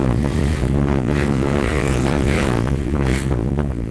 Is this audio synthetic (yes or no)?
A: yes